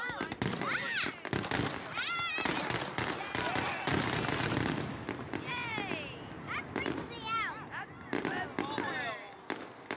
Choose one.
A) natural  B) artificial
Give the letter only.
A